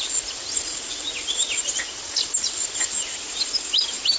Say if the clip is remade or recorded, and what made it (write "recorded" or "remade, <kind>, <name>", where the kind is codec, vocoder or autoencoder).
recorded